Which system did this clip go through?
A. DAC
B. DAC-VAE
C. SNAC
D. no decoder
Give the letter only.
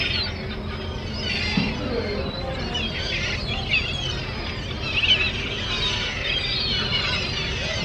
D